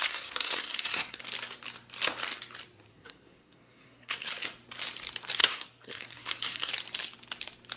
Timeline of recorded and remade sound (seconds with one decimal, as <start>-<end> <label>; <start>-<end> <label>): 0.0-1.2 remade; 1.2-2.9 recorded; 2.9-4.3 remade; 4.3-5.4 recorded; 5.4-6.7 remade; 6.7-7.8 recorded